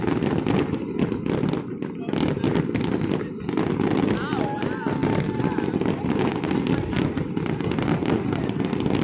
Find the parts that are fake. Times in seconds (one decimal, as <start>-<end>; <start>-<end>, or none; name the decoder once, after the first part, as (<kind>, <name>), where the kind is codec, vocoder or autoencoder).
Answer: none